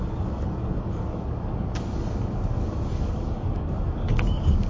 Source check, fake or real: fake